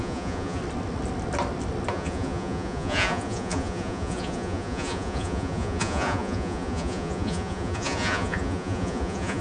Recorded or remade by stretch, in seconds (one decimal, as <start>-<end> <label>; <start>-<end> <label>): 0.0-0.6 remade; 0.6-1.9 recorded; 1.9-9.4 remade